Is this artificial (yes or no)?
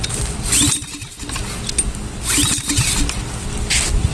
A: no